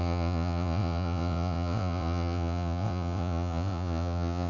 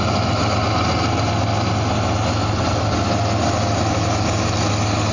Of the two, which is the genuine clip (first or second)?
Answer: second